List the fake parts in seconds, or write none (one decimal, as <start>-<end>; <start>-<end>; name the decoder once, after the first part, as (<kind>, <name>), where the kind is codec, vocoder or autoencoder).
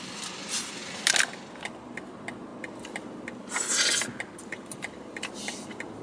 none